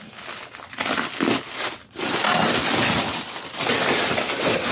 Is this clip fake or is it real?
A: real